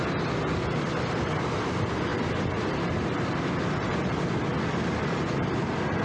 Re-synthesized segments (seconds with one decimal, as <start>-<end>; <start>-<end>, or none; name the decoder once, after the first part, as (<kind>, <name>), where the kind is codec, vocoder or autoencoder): none